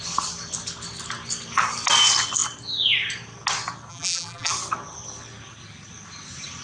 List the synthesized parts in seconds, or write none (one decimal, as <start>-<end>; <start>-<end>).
3.9-4.5